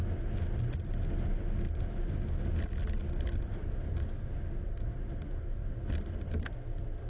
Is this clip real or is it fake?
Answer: real